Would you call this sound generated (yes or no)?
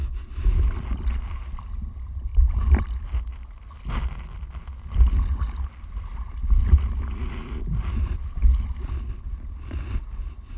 no